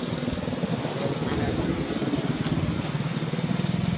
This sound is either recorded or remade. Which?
recorded